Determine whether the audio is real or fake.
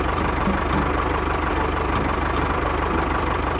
fake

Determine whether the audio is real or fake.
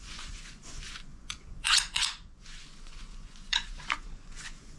fake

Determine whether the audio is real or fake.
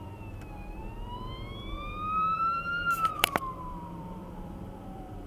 fake